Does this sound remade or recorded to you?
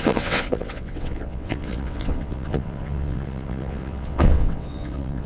remade